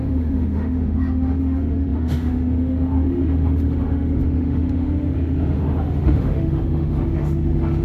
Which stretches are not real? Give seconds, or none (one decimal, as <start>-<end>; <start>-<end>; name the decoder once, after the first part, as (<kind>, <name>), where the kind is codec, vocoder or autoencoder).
0.0-7.8 (autoencoder, DAC-VAE)